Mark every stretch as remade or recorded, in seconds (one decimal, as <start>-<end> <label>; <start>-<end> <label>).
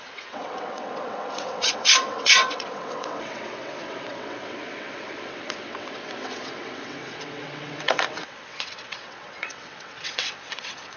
0.0-11.0 remade